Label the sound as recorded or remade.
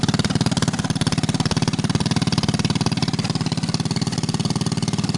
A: recorded